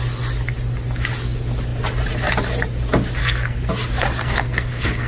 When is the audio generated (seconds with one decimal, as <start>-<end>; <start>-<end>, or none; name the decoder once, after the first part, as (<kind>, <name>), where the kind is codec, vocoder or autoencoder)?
3.2-3.7 (codec, SNAC); 4.2-5.1